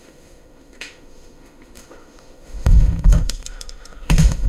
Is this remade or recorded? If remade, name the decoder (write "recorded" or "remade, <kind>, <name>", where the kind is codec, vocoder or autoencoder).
remade, autoencoder, DAC-VAE